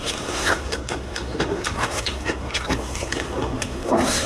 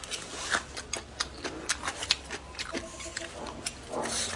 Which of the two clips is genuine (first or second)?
second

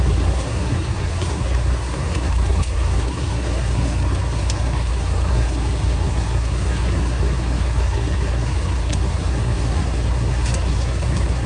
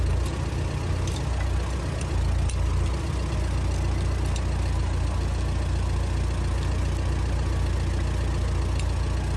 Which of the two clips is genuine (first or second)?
second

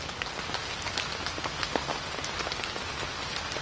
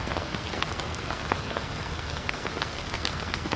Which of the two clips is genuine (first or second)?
first